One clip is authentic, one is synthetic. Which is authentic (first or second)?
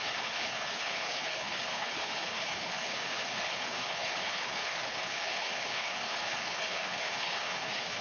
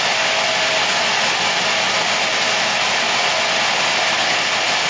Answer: second